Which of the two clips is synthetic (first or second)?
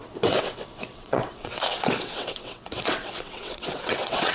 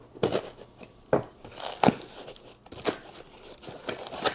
first